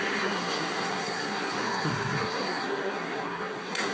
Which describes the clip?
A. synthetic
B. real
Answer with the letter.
A